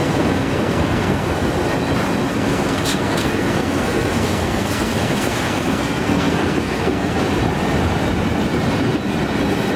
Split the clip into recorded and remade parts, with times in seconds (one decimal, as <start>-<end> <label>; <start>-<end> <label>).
0.0-1.5 remade; 1.5-2.3 recorded; 2.3-7.2 remade; 7.2-9.8 recorded

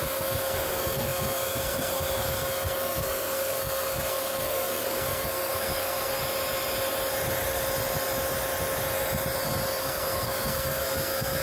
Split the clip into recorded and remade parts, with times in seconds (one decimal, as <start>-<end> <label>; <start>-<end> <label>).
0.0-6.2 remade; 6.2-9.8 recorded; 9.8-11.4 remade

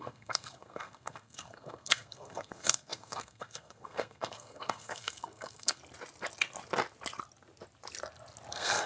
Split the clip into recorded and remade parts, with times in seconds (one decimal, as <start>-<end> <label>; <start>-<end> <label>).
0.0-5.8 remade; 5.8-8.5 recorded; 8.5-8.9 remade

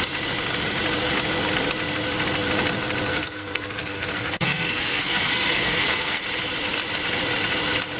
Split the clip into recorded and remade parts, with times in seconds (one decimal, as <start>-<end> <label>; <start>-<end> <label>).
0.0-3.1 recorded; 3.1-6.2 remade; 6.2-8.0 recorded

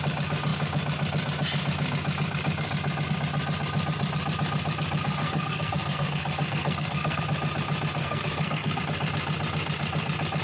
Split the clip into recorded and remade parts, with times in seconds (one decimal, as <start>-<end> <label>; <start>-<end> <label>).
0.0-5.2 recorded; 5.2-7.2 remade; 7.2-8.0 recorded; 8.0-8.8 remade; 8.8-10.4 recorded

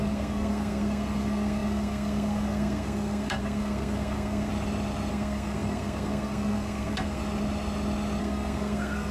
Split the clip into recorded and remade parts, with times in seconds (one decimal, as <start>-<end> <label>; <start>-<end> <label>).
0.0-4.5 remade; 4.5-5.1 recorded; 5.1-7.2 remade; 7.2-8.2 recorded; 8.2-9.1 remade